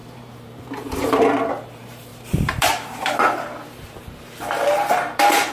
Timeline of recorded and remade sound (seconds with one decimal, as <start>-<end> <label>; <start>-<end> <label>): 0.0-5.5 remade